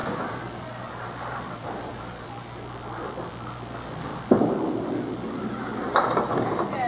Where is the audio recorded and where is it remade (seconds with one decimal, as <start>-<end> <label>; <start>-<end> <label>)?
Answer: 0.0-3.3 remade; 3.3-4.1 recorded; 4.1-4.9 remade; 4.9-6.9 recorded